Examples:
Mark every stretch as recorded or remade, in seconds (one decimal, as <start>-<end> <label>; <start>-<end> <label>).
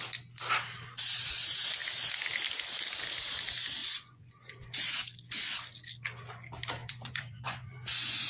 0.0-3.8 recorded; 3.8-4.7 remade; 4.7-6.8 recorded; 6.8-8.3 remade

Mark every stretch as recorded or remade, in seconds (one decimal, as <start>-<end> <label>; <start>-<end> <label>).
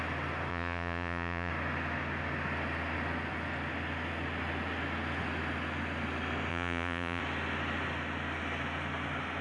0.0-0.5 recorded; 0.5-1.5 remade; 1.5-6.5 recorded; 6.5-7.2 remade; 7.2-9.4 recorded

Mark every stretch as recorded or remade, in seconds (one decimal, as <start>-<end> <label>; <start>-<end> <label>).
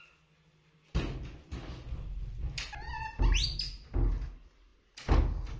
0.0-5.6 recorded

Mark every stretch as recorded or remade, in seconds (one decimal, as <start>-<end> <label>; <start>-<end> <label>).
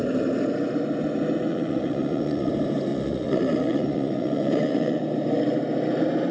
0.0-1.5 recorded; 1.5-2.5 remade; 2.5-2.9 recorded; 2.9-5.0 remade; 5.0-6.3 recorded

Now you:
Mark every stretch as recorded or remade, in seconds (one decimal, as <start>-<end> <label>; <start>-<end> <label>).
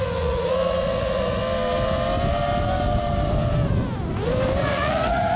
0.0-1.4 remade; 1.4-4.6 recorded; 4.6-5.4 remade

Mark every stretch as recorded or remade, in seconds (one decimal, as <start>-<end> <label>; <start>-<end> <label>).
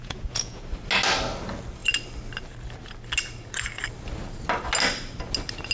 0.0-0.6 remade; 0.6-5.7 recorded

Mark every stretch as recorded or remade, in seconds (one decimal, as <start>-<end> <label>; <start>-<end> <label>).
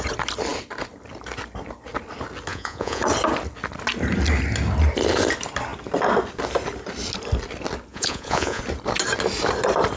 0.0-2.5 recorded; 2.5-3.0 remade; 3.0-7.9 recorded; 7.9-8.6 remade; 8.6-10.0 recorded